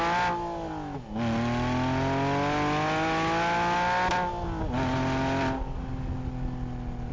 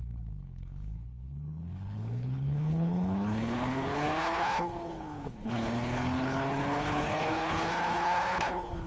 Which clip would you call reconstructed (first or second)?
second